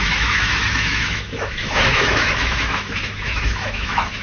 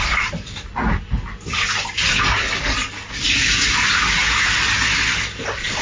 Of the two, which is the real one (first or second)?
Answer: second